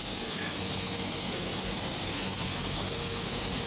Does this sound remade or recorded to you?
remade